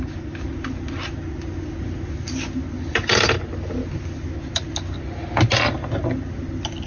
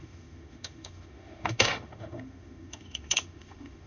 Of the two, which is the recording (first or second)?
first